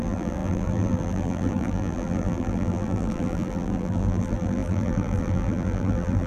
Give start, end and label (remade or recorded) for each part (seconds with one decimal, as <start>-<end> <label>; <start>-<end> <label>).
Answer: 0.0-6.3 remade